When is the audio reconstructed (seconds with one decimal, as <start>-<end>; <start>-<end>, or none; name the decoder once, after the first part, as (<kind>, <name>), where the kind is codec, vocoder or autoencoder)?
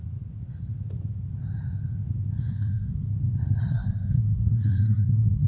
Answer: 2.5-3.1 (codec, SNAC); 3.7-5.5